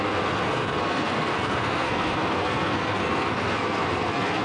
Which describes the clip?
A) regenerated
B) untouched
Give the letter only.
A